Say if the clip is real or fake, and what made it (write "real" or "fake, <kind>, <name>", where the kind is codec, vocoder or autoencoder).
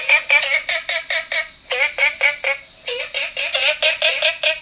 real